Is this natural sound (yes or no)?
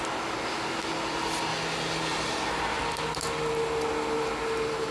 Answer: yes